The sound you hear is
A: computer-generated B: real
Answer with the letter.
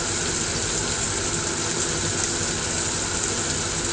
B